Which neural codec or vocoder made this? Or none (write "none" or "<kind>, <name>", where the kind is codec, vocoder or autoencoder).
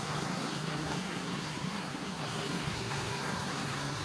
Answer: codec, SNAC